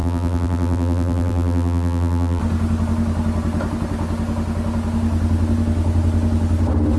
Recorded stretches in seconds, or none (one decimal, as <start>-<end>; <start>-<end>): 2.4-7.0

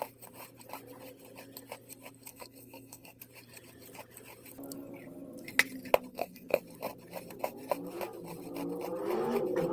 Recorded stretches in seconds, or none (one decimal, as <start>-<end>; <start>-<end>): 0.0-2.3; 3.2-6.1; 6.6-9.7